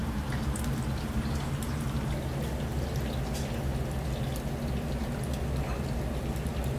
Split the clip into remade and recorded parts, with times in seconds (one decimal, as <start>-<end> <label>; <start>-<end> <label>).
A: 0.0-2.1 remade; 2.1-6.8 recorded

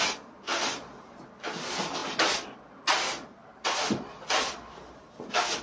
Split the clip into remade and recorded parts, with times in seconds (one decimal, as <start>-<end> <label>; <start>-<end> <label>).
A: 0.0-5.6 recorded

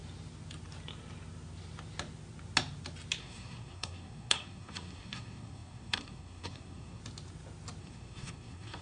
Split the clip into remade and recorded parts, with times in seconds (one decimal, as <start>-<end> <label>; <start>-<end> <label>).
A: 0.0-3.2 recorded; 3.2-7.0 remade; 7.0-7.8 recorded; 7.8-8.8 remade

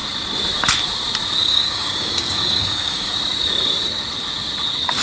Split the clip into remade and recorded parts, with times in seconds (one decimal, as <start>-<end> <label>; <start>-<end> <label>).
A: 0.0-1.4 recorded; 1.4-3.1 remade; 3.1-5.0 recorded

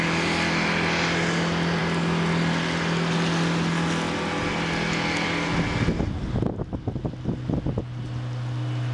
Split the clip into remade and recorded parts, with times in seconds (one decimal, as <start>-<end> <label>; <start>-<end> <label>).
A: 0.0-8.9 recorded

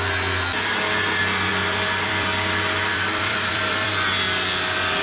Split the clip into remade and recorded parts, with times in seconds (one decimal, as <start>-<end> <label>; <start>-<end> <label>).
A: 0.0-1.5 recorded; 1.5-3.9 remade; 3.9-5.0 recorded

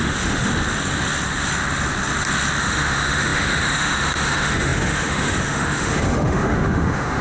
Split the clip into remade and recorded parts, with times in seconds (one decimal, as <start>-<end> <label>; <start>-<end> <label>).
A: 0.0-0.5 remade; 0.5-2.6 recorded; 2.6-7.2 remade